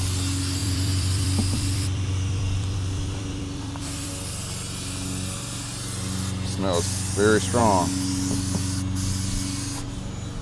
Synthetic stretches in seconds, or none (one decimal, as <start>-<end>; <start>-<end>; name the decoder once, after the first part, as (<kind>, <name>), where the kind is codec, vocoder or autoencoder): 0.6-4.1 (vocoder, BigVGAN v2)